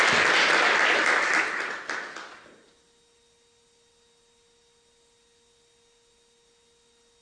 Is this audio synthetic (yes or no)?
no